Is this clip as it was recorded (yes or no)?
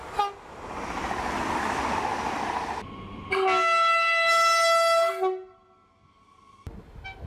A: yes